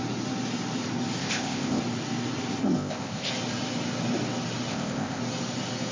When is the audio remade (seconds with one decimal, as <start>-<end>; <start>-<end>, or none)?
1.2-1.8; 2.6-3.3; 4.7-5.2